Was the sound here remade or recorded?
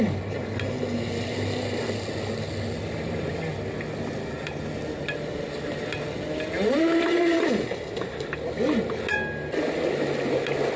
recorded